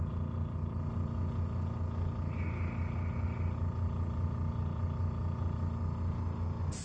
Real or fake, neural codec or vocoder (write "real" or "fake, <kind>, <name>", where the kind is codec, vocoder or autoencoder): real